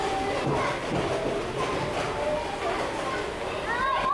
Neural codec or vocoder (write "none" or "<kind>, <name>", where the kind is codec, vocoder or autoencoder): none